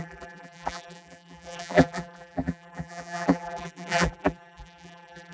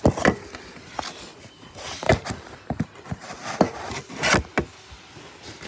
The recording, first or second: second